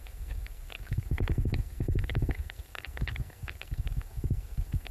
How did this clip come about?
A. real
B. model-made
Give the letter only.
B